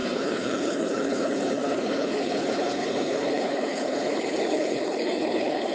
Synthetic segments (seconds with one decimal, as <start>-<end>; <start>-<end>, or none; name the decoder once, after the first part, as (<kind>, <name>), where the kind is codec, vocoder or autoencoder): 0.0-5.7 (codec, HILCodec)